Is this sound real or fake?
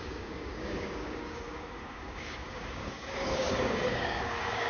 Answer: fake